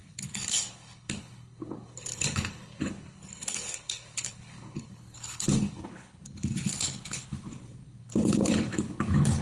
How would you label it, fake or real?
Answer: fake